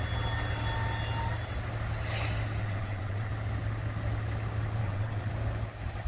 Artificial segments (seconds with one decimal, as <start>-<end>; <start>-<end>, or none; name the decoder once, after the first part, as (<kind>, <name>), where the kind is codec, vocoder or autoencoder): 2.6-3.3 (vocoder, WaveNeXt); 4.8-5.3